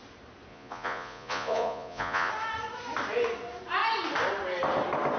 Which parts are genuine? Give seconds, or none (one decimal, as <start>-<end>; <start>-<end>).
0.0-0.5; 2.3-5.2